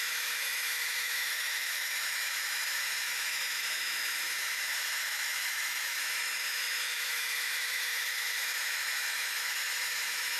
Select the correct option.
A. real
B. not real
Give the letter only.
B